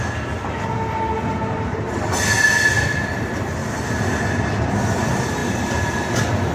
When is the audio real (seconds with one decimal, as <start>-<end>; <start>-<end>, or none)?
0.0-6.5